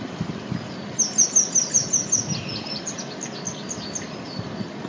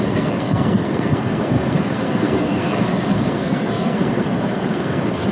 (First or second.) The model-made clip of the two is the second